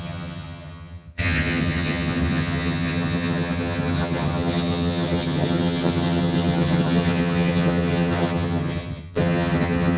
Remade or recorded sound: remade